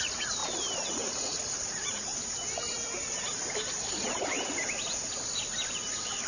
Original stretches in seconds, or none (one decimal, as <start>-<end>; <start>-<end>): 0.4-0.9; 2.1-6.3